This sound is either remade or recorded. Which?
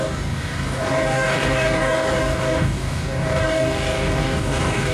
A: remade